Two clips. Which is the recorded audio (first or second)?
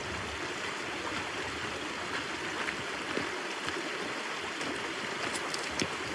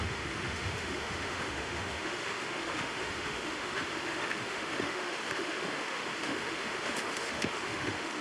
first